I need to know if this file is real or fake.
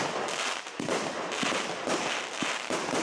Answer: real